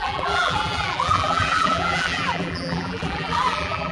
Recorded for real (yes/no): no